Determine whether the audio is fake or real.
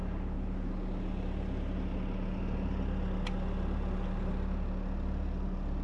real